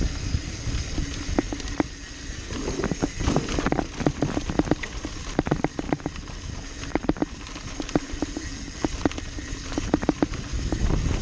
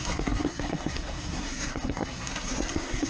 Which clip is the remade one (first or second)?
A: second